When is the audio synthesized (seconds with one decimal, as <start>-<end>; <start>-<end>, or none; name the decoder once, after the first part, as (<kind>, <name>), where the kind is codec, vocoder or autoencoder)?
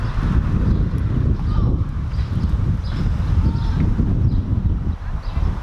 0.0-1.5 (vocoder, BigVGAN v2); 4.9-5.6